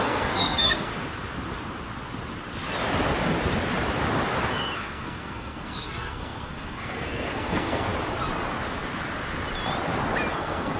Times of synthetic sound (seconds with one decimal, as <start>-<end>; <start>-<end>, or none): 0.0-0.9; 4.5-7.9; 10.3-10.8